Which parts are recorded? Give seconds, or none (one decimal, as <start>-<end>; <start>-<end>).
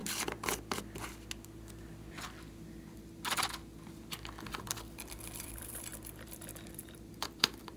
0.0-4.7